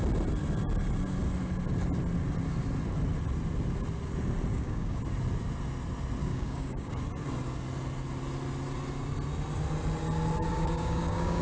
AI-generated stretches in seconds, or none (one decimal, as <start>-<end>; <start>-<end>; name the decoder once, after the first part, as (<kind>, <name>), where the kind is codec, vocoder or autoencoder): 4.5-5.0 (codec, DAC); 6.2-7.0; 10.5-11.4